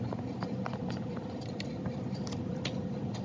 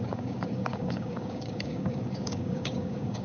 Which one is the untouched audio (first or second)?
first